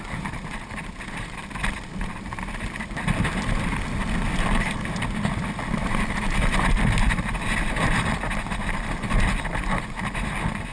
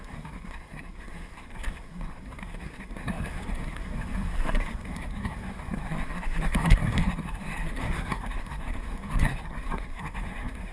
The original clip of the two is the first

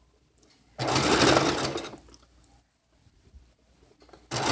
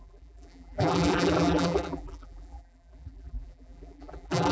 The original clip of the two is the first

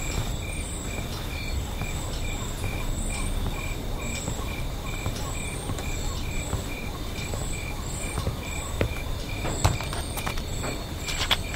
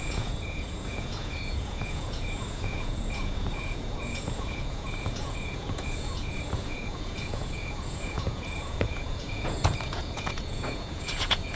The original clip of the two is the first